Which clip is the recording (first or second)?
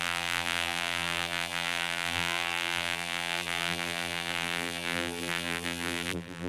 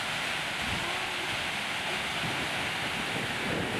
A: second